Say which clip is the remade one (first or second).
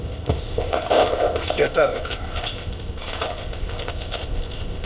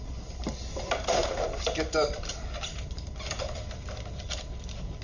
first